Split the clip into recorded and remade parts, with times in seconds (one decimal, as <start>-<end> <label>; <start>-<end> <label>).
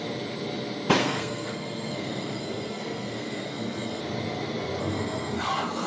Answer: 0.0-1.0 recorded; 1.0-4.0 remade; 4.0-4.8 recorded; 4.8-5.5 remade; 5.5-5.9 recorded